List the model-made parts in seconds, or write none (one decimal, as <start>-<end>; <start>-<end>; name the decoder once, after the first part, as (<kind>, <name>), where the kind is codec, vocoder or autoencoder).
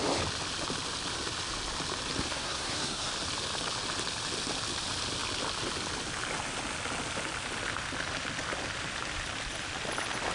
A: 2.3-3.1 (codec, SNAC)